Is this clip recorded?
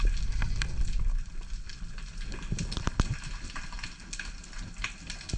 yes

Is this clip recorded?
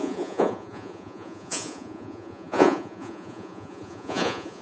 no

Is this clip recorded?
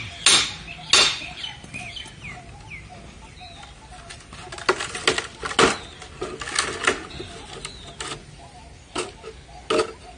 yes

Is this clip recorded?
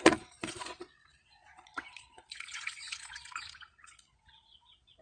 no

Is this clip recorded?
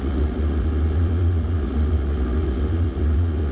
no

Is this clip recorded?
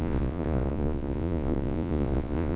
no